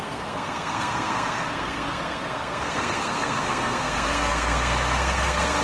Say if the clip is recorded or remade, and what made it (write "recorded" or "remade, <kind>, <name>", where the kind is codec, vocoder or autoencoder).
remade, codec, SNAC